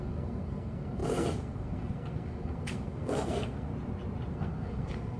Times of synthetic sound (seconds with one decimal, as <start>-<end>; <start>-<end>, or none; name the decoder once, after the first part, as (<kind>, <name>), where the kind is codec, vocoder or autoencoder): 0.0-3.7 (codec, SNAC); 4.3-5.2